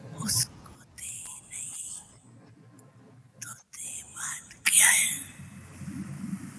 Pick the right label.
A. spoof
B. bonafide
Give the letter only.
B